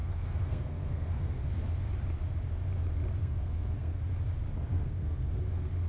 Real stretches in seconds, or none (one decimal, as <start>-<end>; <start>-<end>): 1.5-3.2; 4.0-4.7; 5.4-5.9